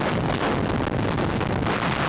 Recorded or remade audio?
recorded